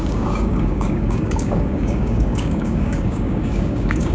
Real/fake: fake